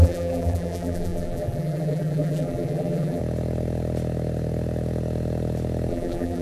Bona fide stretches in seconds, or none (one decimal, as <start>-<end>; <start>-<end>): 3.2-5.9